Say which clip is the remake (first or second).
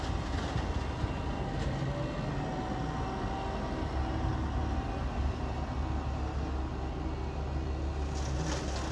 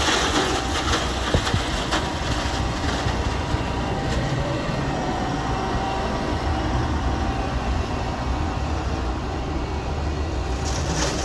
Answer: second